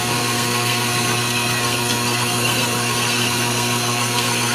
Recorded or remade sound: remade